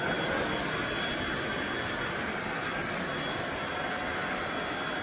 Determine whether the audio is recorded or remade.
recorded